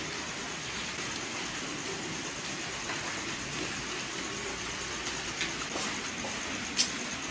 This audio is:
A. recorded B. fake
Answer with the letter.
A